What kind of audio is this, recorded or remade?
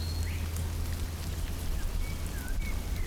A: recorded